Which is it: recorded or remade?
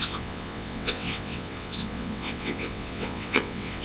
remade